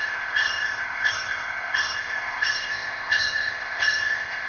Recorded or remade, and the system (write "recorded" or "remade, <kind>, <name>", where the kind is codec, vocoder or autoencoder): remade, codec, ZipCodec